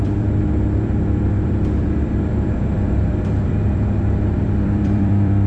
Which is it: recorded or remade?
remade